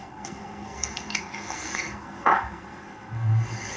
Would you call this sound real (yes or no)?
no